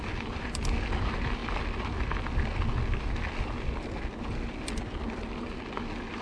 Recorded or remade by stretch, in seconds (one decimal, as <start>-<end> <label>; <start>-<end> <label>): 0.0-6.2 recorded